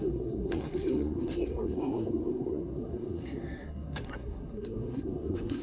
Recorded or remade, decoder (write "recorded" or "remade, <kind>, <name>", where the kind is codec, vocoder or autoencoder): remade, codec, SNAC